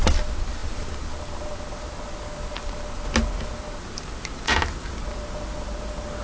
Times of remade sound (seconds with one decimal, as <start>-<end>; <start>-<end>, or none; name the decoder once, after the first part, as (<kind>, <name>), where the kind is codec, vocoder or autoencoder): none